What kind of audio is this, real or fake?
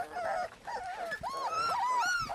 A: real